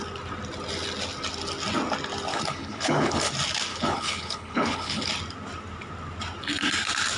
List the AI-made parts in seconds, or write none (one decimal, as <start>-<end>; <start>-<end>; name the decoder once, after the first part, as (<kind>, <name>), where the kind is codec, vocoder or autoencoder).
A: 2.3-3.3 (codec, HILCodec); 3.7-5.1